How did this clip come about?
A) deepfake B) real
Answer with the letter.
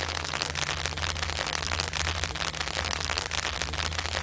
B